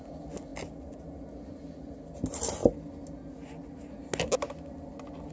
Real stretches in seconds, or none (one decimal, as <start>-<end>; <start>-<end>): 0.0-5.3